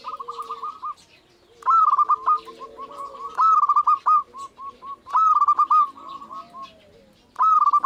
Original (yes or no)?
yes